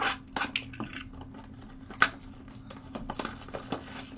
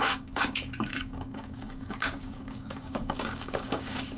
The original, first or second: first